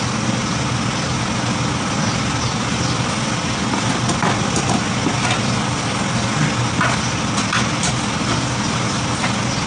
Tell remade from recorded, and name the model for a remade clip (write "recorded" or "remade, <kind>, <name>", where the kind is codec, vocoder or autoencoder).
recorded